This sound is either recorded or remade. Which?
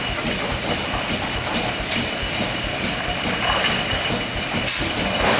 recorded